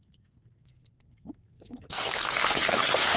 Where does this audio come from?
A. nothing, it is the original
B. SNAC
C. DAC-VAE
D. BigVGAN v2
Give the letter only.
B